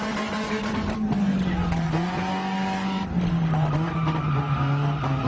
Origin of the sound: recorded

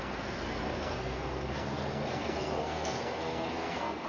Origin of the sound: remade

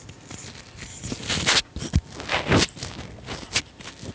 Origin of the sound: recorded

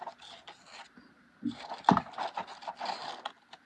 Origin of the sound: recorded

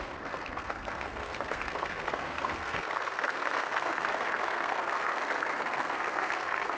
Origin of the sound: remade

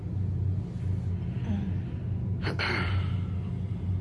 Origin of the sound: recorded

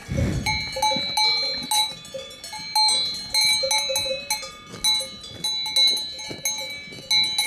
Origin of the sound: recorded